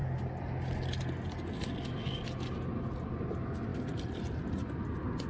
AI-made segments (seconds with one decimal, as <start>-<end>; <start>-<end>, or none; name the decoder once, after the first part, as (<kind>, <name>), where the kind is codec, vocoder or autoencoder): none